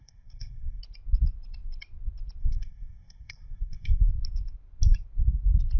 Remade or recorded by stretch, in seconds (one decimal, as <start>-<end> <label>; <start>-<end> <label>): 0.0-0.8 remade; 0.8-2.4 recorded; 2.4-4.1 remade; 4.1-5.8 recorded